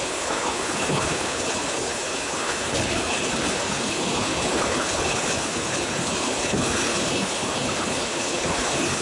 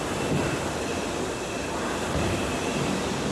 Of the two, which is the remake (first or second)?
first